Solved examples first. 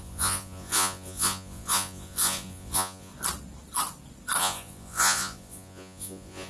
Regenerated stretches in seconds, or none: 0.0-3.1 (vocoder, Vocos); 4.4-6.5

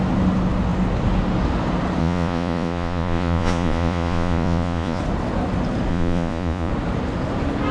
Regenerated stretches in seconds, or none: 2.0-5.0 (vocoder, Vocos); 5.9-6.7

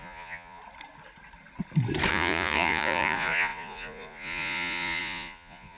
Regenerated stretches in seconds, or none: 0.0-0.6 (vocoder, Vocos); 2.1-5.8

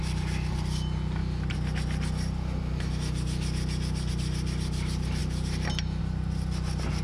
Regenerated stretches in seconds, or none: none

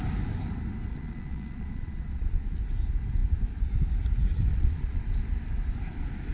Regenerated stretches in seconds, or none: 0.9-2.6 (vocoder, Vocos); 4.5-5.0

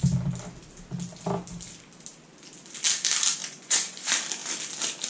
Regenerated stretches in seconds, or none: 3.4-4.0 (vocoder, Vocos)